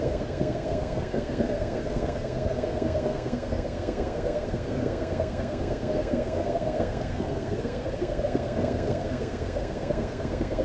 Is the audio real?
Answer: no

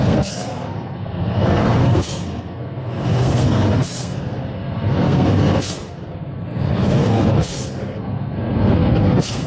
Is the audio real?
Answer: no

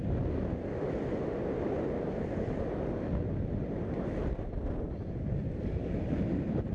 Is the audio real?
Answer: yes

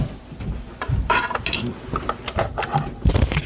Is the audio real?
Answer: yes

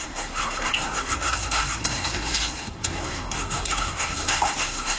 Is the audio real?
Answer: no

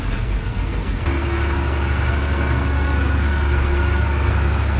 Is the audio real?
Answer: no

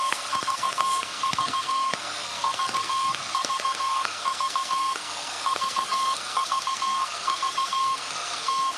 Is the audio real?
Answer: no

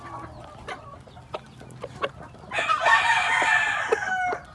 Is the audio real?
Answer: yes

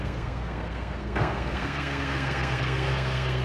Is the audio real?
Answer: no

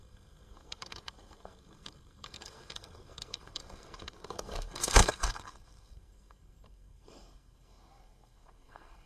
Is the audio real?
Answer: no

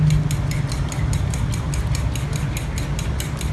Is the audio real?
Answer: yes